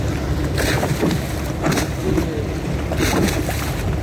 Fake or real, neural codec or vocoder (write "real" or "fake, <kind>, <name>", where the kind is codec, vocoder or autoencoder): real